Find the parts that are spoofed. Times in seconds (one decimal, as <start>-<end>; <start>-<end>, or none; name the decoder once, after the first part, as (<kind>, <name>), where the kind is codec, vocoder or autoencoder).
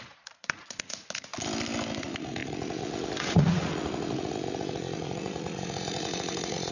0.0-1.3 (vocoder, Vocos); 2.0-6.7